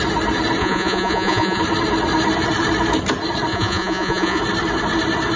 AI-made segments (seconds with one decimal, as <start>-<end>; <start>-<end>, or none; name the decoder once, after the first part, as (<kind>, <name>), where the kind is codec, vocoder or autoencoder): 0.6-1.6 (vocoder, Vocos); 3.5-4.4